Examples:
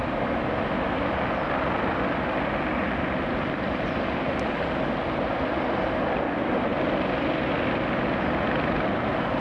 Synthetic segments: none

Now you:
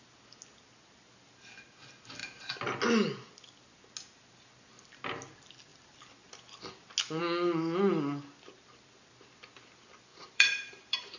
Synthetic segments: 10.1-11.2 (vocoder, BigVGAN v2)

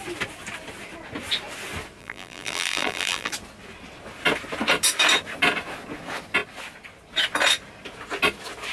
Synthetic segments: 2.0-3.3 (vocoder, BigVGAN v2)

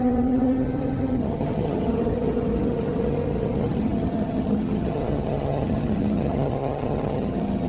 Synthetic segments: 0.0-7.7 (vocoder, HiFi-GAN)

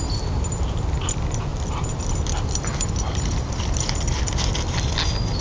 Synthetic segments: 1.5-4.2 (vocoder, BigVGAN v2)

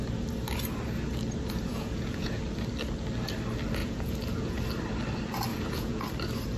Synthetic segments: 1.7-2.4 (vocoder, Vocos); 3.8-4.6; 5.5-6.0